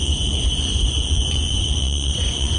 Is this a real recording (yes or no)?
no